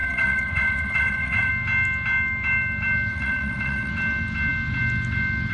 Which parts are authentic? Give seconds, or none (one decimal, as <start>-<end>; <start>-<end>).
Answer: 1.5-3.1; 3.9-5.5